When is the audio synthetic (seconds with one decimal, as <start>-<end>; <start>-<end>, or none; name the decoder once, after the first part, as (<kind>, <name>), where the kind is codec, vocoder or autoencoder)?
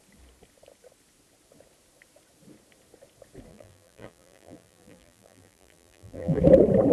3.5-6.4 (vocoder, BigVGAN v2)